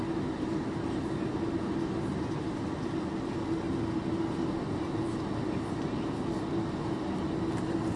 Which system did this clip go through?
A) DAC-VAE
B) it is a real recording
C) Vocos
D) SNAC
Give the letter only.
B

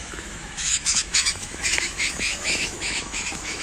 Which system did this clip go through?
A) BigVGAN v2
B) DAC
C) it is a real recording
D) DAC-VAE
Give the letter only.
D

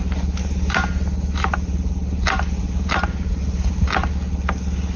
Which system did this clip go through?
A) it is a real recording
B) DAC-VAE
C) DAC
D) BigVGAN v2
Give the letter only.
A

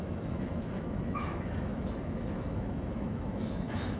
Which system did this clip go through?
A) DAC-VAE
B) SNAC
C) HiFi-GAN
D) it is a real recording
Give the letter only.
A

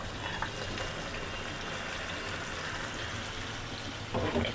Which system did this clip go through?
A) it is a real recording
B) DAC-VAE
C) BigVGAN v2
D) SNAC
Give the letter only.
A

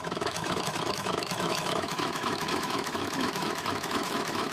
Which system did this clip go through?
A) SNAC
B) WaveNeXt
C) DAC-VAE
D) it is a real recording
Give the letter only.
C